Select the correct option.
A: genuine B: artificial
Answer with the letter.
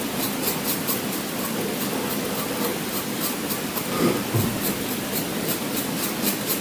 A